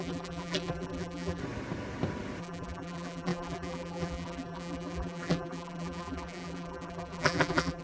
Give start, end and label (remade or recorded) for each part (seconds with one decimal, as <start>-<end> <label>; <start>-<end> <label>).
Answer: 0.0-1.4 remade; 1.4-2.4 recorded; 2.4-7.8 remade